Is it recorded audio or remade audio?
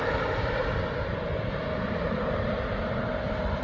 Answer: recorded